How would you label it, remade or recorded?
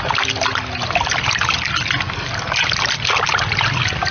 recorded